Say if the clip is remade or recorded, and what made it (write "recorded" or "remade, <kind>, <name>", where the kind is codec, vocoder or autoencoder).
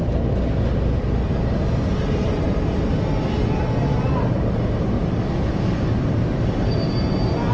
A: recorded